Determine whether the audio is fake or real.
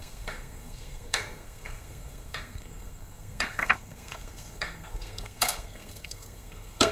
fake